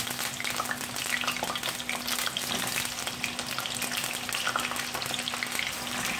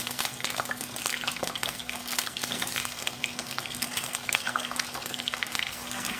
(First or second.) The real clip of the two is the first